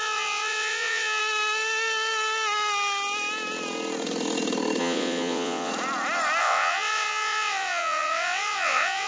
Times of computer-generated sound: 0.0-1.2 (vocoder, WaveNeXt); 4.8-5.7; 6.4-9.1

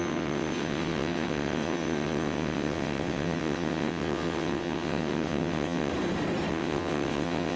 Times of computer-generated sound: 0.0-5.9 (vocoder, WaveNeXt); 6.5-7.6

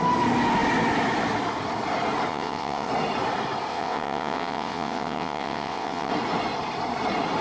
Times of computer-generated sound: 2.3-2.9 (vocoder, WaveNeXt); 3.7-6.1

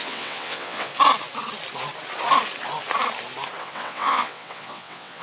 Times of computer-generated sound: 0.0-0.9 (vocoder, WaveNeXt); 3.6-5.2

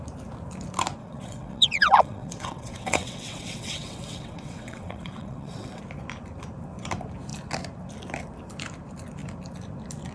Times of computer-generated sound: 1.0-5.8 (vocoder, WaveNeXt)

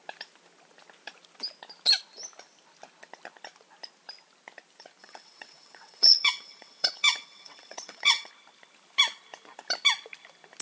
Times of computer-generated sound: 5.0-8.3 (vocoder, WaveNeXt)